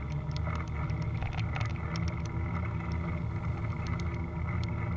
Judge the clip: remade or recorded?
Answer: recorded